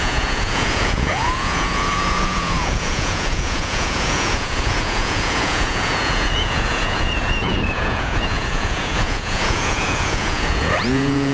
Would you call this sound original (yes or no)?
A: no